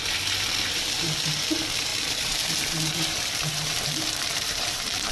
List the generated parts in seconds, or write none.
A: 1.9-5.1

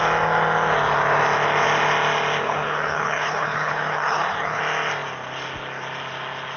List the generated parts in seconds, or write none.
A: 2.4-4.6

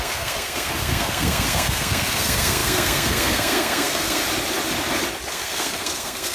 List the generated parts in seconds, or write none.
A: 0.0-4.2; 5.3-6.3

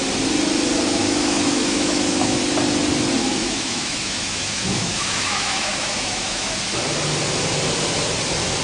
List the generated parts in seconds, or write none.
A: 1.0-2.4; 3.4-6.5